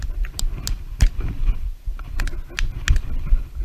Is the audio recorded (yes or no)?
yes